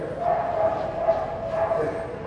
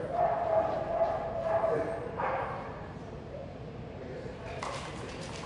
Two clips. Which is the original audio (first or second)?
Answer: first